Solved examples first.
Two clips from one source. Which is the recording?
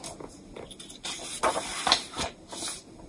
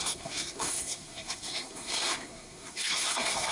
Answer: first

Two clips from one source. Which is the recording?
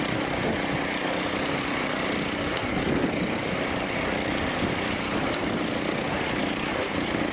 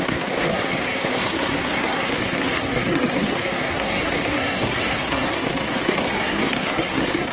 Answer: first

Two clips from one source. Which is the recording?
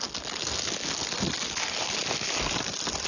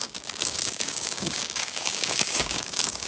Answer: first